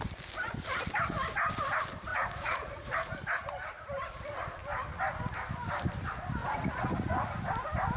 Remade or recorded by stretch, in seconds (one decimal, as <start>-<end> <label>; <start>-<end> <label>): 0.0-2.1 recorded; 2.1-3.1 remade; 3.1-6.4 recorded; 6.4-7.5 remade; 7.5-8.0 recorded